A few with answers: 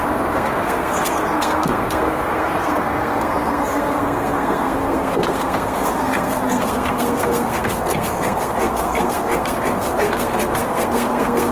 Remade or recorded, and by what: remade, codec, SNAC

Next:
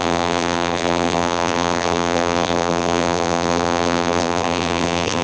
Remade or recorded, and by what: remade, vocoder, BigVGAN v2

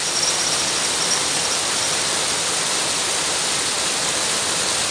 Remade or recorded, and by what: recorded